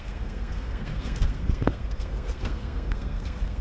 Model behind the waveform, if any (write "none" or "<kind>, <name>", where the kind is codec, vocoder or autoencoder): codec, SNAC